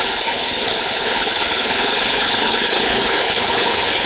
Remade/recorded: remade